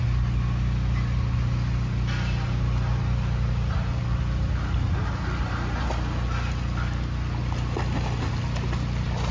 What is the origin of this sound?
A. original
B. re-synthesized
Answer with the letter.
A